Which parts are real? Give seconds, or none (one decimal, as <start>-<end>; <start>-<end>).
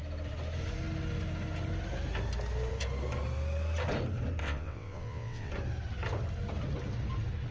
0.0-4.4; 5.5-7.5